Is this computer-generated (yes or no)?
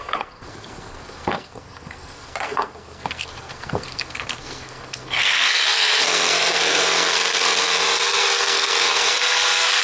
yes